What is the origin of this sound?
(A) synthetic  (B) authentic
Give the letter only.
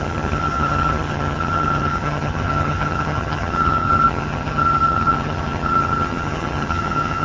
A